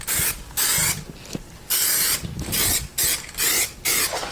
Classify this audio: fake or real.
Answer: real